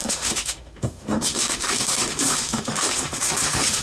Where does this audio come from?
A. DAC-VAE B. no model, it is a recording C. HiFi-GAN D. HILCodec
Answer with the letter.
A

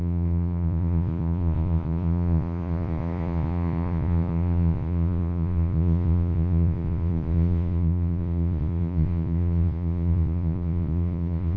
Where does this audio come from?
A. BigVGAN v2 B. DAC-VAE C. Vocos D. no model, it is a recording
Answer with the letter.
C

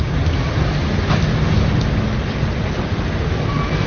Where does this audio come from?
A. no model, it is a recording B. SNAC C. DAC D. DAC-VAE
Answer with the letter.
A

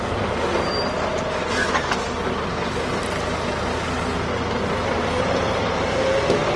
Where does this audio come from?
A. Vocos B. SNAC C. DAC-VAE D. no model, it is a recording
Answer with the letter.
D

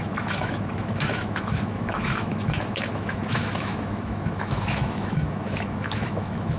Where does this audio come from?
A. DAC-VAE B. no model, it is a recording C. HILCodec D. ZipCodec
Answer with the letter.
A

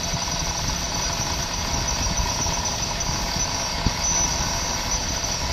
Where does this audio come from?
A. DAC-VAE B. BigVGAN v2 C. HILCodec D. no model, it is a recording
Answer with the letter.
D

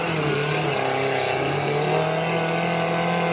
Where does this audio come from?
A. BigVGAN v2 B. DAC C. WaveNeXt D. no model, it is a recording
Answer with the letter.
D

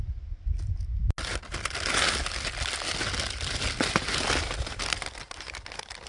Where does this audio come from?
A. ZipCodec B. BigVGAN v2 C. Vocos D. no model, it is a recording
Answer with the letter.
D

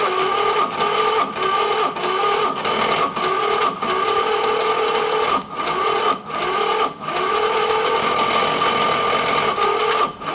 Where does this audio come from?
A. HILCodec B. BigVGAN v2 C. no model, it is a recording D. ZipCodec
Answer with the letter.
C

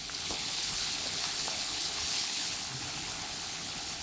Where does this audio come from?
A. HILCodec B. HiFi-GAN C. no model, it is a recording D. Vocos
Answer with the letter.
A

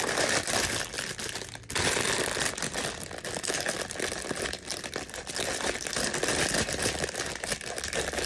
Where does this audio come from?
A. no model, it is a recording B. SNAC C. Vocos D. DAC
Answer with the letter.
A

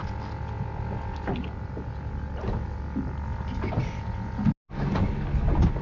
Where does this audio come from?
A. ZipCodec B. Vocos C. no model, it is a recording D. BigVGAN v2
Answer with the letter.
C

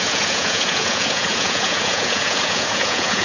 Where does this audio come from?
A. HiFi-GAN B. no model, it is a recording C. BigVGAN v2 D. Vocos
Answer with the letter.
D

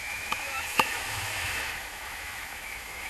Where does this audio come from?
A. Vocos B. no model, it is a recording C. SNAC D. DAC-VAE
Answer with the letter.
D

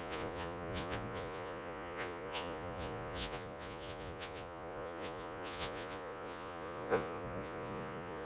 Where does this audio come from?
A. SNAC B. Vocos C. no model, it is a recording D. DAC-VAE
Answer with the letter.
B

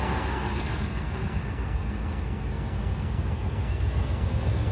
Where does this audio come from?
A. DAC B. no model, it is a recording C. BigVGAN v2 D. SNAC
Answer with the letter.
D